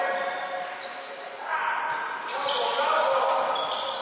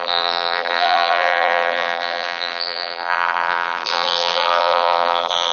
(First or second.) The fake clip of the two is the second